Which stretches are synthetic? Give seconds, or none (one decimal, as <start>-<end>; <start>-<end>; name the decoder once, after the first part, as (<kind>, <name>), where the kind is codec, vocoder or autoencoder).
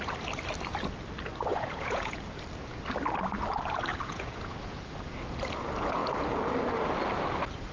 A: 1.5-2.2 (vocoder, Vocos); 3.9-4.8